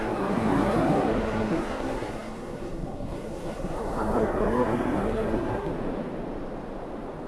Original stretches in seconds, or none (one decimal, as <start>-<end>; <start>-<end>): 5.7-7.3